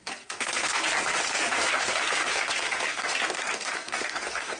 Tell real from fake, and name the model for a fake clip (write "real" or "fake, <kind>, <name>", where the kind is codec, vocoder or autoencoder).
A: fake, codec, SNAC